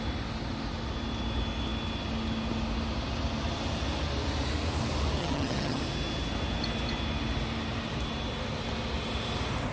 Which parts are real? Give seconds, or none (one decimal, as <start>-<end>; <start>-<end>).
0.0-5.2; 5.8-9.7